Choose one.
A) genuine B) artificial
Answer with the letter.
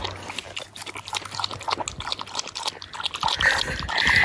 A